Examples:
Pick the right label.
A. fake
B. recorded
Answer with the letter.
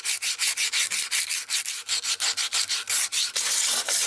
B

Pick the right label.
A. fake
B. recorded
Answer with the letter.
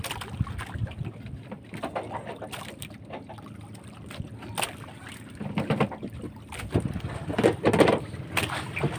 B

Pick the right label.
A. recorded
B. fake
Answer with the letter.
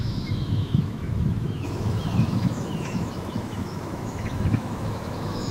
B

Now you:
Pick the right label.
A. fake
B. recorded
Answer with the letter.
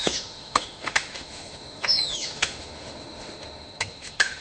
A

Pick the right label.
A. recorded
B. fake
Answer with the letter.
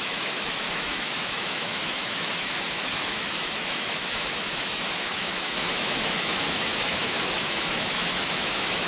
B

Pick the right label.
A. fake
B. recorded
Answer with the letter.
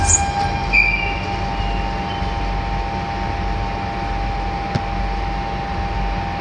B